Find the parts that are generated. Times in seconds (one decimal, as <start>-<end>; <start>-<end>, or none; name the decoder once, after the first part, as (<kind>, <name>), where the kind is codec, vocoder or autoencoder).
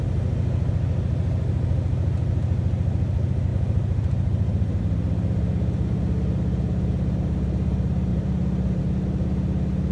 3.5-4.8 (vocoder, BigVGAN v2); 8.1-8.8